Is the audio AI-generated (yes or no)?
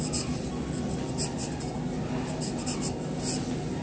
no